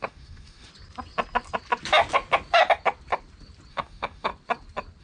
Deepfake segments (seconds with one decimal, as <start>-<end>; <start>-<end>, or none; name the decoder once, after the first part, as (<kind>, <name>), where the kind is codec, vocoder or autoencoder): 0.0-0.7 (autoencoder, DAC-VAE); 3.7-4.3